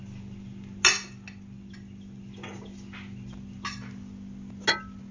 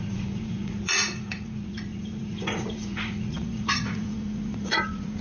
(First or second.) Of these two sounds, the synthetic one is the second